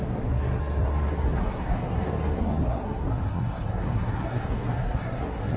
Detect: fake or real fake